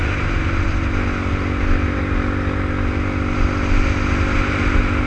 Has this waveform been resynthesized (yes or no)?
no